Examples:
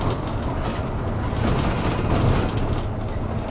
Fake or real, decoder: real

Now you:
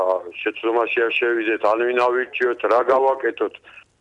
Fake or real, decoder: real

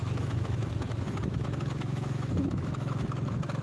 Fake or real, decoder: fake, autoencoder, DAC-VAE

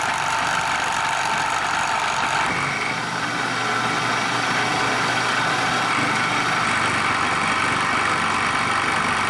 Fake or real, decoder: real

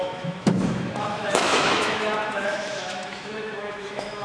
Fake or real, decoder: fake, autoencoder, DAC-VAE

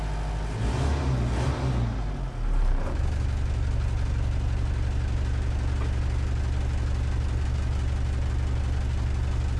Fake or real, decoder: real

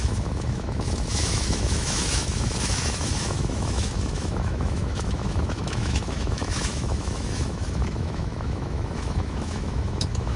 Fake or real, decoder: fake, autoencoder, DAC-VAE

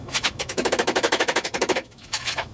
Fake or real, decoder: fake, autoencoder, DAC-VAE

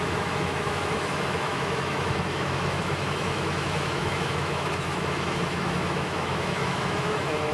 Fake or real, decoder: fake, autoencoder, DAC-VAE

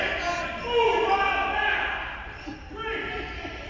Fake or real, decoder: real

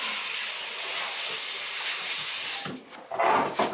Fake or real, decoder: real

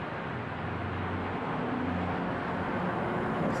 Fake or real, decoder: real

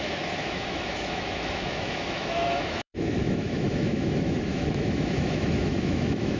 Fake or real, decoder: fake, autoencoder, DAC-VAE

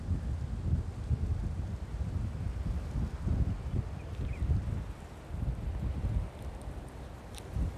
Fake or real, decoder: real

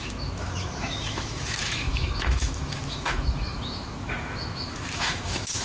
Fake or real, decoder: fake, autoencoder, DAC-VAE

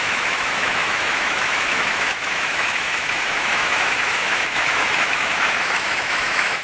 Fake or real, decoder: fake, autoencoder, DAC-VAE